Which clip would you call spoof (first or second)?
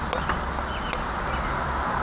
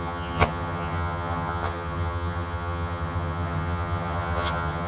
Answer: second